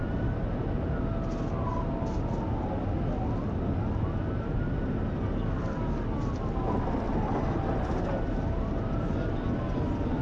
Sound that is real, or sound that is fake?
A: real